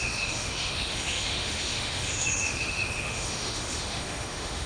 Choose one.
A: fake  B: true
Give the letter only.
A